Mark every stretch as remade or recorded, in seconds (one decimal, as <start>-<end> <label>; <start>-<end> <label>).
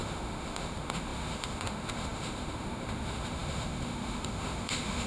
0.0-5.1 remade